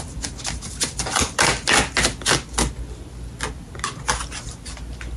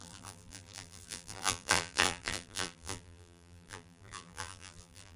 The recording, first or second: first